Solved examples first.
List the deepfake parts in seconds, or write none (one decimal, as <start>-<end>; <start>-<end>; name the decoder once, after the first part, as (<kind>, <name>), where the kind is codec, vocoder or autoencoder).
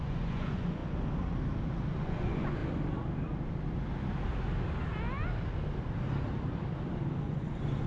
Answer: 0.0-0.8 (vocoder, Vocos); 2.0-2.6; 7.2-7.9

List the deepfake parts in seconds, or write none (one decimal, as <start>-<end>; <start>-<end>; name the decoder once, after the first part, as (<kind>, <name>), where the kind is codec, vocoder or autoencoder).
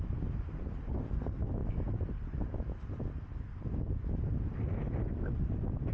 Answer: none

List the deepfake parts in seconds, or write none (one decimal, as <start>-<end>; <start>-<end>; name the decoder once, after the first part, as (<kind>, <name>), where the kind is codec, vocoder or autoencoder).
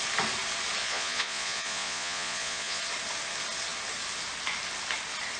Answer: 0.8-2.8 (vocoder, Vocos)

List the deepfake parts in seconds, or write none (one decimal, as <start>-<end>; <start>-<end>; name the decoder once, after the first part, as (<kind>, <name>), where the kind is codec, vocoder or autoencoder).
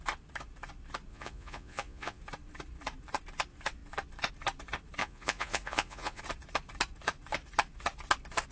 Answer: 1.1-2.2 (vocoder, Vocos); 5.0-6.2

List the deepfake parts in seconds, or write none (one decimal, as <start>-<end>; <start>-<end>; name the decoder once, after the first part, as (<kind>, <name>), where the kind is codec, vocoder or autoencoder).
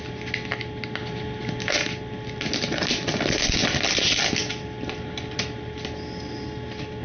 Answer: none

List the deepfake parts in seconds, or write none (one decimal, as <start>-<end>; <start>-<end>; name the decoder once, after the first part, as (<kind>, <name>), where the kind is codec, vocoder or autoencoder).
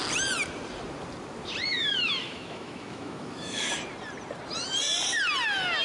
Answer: 1.7-3.7 (autoencoder, DAC-VAE)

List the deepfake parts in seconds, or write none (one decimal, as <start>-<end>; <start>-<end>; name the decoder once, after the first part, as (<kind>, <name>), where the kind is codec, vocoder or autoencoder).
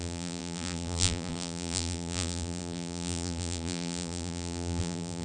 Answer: 0.0-5.2 (vocoder, BigVGAN v2)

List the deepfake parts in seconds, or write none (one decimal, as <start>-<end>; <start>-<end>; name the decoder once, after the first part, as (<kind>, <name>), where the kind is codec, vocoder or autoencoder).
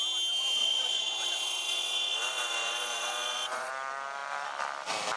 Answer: 0.6-3.7 (vocoder, Vocos)